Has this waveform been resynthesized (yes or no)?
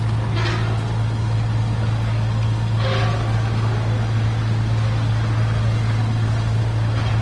no